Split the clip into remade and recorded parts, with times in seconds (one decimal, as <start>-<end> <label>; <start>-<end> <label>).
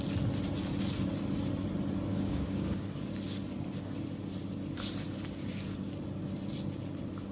0.0-2.1 recorded; 2.1-2.8 remade; 2.8-7.3 recorded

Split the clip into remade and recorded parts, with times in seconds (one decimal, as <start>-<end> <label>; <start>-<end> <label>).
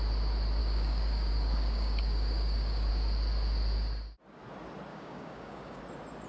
0.0-0.6 recorded; 0.6-2.9 remade; 2.9-4.9 recorded; 4.9-5.8 remade; 5.8-6.3 recorded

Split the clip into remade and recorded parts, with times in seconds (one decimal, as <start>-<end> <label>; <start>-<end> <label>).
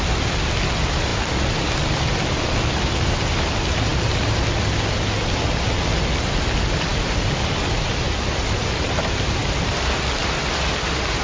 0.0-11.2 recorded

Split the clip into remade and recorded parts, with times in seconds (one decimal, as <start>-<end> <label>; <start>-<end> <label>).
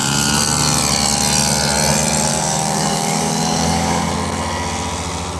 0.0-2.3 recorded; 2.3-4.1 remade; 4.1-5.4 recorded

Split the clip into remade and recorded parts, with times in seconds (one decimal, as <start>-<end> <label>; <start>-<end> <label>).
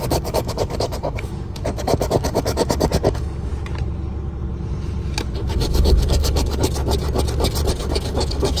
0.0-3.5 remade; 3.5-5.4 recorded; 5.4-6.8 remade; 6.8-7.7 recorded; 7.7-8.6 remade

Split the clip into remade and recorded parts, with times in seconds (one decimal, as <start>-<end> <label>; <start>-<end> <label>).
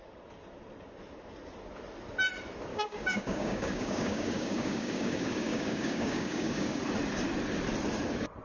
0.0-2.7 recorded; 2.7-6.8 remade; 6.8-8.4 recorded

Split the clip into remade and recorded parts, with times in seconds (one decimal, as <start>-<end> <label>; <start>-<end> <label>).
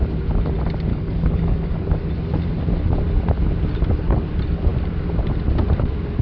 0.0-0.9 recorded; 0.9-2.1 remade; 2.1-6.2 recorded